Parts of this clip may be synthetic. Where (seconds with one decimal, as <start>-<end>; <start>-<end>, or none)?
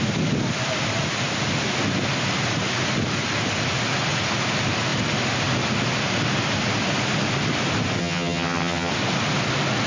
8.0-8.9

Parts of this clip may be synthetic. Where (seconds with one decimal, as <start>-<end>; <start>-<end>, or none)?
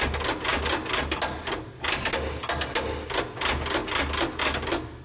none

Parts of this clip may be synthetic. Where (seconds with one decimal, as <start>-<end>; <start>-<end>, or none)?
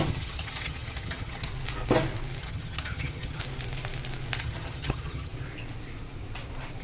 0.0-1.5; 2.4-3.4; 4.4-5.3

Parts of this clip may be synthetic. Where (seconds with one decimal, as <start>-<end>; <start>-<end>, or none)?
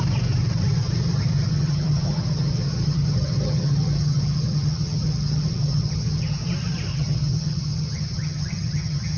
1.5-6.4; 6.9-9.2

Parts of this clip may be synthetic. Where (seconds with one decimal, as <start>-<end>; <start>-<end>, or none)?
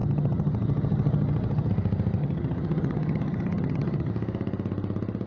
0.0-1.7; 2.2-4.1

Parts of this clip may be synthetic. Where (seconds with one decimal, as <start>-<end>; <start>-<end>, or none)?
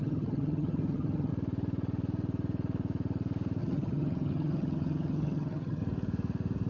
0.0-1.3; 3.6-5.8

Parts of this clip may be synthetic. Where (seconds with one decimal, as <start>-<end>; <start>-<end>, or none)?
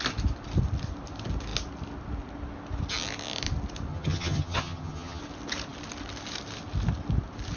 3.9-5.2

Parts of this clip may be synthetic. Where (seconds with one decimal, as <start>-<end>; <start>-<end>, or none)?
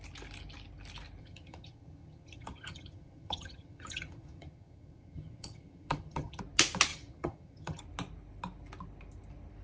1.2-6.4; 6.9-7.8